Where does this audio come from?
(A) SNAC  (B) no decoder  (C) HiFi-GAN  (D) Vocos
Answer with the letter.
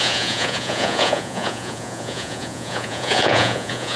D